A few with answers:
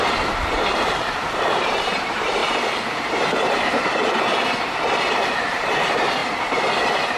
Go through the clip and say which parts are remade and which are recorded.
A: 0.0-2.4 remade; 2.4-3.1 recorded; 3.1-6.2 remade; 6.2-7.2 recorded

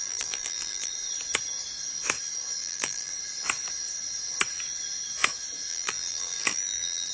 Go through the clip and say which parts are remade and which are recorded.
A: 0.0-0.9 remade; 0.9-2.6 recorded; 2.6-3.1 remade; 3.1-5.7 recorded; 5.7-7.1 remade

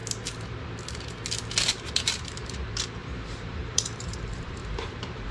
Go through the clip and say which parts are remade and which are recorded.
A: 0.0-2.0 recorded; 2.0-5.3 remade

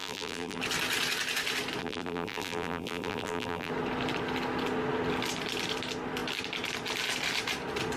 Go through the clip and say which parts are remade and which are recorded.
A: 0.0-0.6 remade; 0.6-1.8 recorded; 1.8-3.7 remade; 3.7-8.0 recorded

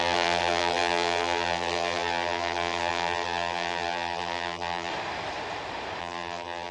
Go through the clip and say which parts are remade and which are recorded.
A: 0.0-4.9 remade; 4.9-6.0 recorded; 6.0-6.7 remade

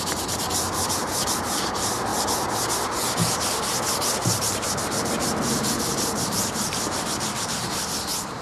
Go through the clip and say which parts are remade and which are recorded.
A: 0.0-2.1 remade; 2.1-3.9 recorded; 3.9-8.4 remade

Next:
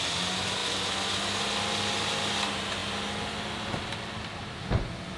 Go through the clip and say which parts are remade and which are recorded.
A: 0.0-5.2 recorded

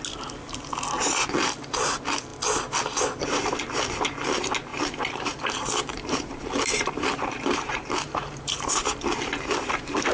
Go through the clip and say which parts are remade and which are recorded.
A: 0.0-4.7 recorded; 4.7-8.7 remade; 8.7-10.1 recorded